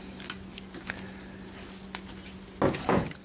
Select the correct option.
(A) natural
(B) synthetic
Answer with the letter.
A